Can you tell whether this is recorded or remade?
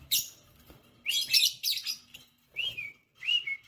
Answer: remade